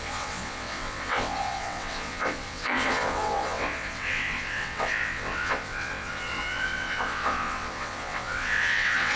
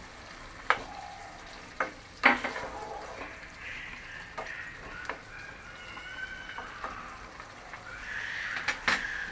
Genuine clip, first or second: second